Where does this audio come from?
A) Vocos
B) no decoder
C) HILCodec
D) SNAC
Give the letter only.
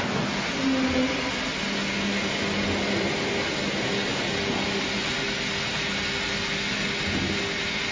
B